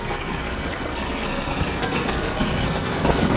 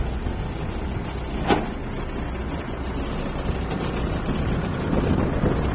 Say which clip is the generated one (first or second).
first